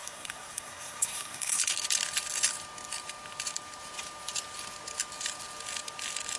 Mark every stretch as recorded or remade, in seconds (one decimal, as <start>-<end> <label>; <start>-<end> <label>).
0.0-1.6 remade; 1.6-6.4 recorded